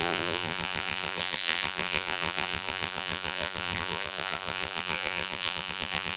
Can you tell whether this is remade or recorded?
remade